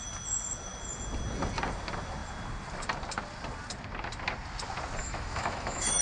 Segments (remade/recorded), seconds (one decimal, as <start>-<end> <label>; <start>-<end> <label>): 0.0-5.0 recorded; 5.0-6.0 remade